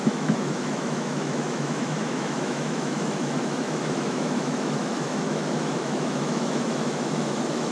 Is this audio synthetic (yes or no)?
yes